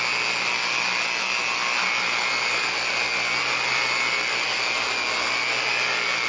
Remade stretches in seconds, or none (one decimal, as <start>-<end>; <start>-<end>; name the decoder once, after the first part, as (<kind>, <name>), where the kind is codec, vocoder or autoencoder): none